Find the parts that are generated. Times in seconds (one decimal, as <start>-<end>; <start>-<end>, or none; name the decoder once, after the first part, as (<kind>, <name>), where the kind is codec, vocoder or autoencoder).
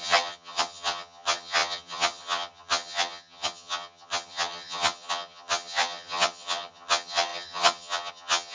0.0-8.5 (vocoder, HiFi-GAN)